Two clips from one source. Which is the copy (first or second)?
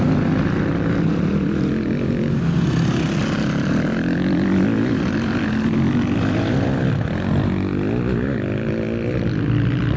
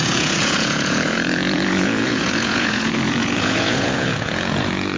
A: second